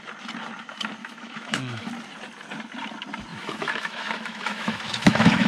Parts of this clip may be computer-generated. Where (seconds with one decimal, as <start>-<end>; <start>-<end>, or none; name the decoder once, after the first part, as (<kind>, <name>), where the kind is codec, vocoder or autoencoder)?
1.0-1.9 (autoencoder, DAC-VAE); 3.3-5.5

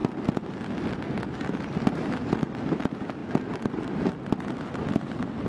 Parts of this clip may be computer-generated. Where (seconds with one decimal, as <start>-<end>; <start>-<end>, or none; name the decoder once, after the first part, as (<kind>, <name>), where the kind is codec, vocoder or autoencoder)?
none

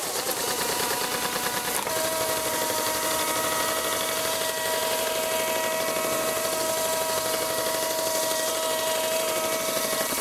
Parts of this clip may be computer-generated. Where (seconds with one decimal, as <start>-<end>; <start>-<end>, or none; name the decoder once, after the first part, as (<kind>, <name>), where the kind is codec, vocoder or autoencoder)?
none

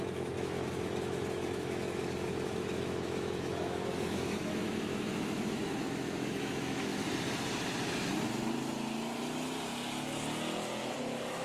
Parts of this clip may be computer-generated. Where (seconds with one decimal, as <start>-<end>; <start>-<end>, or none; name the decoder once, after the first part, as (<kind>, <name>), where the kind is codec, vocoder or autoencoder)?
0.0-6.9 (autoencoder, DAC-VAE); 11.0-11.4

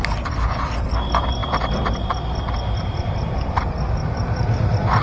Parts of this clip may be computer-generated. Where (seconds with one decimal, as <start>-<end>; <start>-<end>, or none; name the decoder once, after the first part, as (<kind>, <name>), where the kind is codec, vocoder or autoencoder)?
none